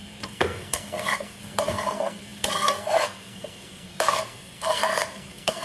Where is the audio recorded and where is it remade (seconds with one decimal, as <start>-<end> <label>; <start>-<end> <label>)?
0.0-5.6 remade